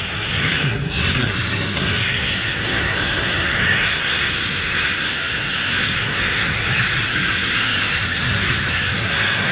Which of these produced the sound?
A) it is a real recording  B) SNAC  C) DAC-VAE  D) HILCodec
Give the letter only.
B